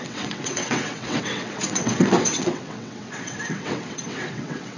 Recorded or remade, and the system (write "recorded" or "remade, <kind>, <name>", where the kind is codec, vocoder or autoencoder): remade, vocoder, WaveNeXt